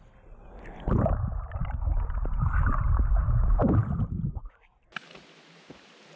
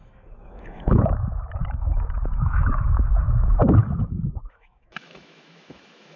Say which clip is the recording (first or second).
first